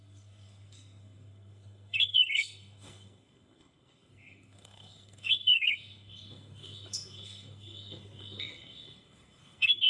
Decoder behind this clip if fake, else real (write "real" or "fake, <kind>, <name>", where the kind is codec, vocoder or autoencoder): fake, codec, SNAC